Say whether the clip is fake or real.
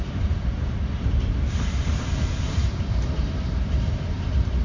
fake